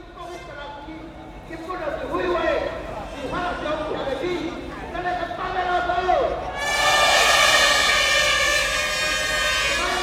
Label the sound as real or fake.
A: fake